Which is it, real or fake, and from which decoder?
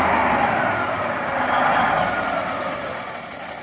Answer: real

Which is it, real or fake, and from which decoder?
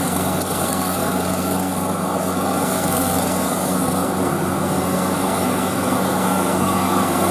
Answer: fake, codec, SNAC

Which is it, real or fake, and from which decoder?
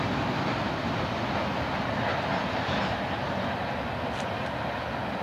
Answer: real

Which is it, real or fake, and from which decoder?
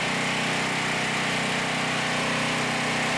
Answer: real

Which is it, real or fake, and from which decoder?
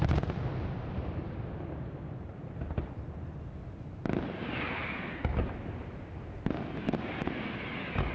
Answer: real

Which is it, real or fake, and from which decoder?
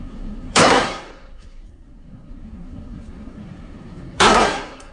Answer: fake, codec, SNAC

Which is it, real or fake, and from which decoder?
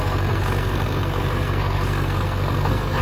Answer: fake, codec, SNAC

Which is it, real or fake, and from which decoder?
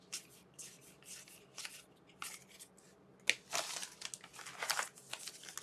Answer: real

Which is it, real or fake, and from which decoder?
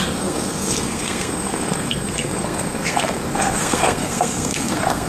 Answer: fake, codec, SNAC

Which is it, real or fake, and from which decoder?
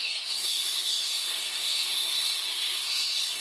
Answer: fake, codec, SNAC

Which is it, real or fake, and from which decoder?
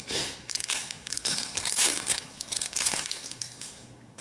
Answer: fake, codec, SNAC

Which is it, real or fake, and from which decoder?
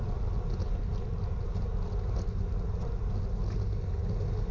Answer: real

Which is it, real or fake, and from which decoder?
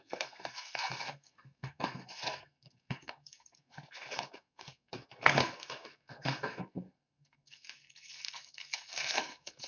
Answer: fake, codec, SNAC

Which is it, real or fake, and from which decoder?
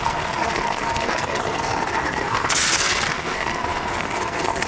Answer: fake, codec, SNAC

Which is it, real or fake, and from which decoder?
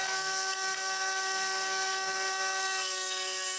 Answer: fake, codec, SNAC